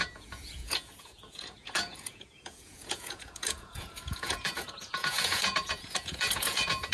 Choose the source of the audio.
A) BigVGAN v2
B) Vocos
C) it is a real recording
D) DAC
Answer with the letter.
B